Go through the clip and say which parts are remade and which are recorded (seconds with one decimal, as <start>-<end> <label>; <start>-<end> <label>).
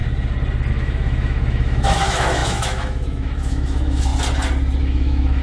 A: 0.0-0.7 recorded; 0.7-4.1 remade; 4.1-4.8 recorded; 4.8-5.4 remade